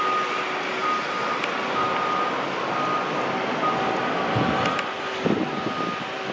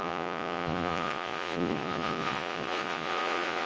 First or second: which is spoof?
second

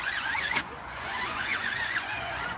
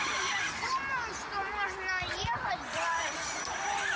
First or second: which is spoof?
first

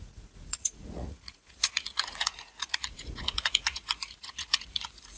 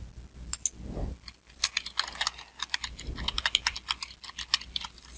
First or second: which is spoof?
first